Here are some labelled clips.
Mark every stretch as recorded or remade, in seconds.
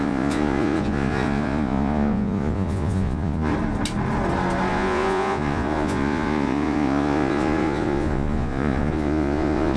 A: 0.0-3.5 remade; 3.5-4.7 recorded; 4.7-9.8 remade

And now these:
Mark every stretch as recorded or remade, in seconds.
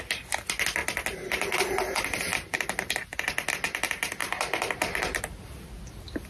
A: 0.0-6.3 recorded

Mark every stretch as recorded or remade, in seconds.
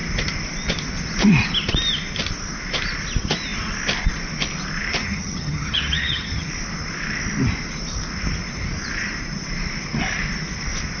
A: 0.0-5.0 recorded; 5.0-6.5 remade; 6.5-11.0 recorded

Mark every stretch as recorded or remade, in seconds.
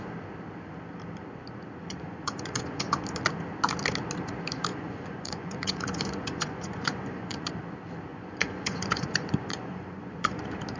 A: 0.0-1.8 recorded; 1.8-3.0 remade; 3.0-4.7 recorded; 4.7-7.5 remade; 7.5-8.1 recorded; 8.1-10.4 remade; 10.4-10.8 recorded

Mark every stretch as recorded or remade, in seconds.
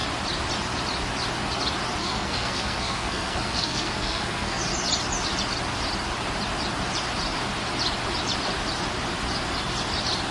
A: 0.0-2.0 recorded; 2.0-4.6 remade; 4.6-10.3 recorded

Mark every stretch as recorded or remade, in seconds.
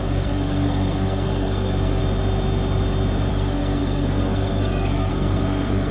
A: 0.0-2.0 remade; 2.0-3.3 recorded; 3.3-5.9 remade